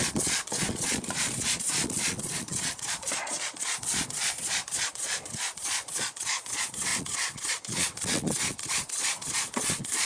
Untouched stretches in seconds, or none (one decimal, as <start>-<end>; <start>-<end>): none